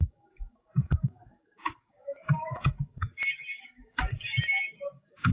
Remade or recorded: remade